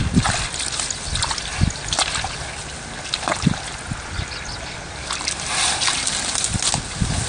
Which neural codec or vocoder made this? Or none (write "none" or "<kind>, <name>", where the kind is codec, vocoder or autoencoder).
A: none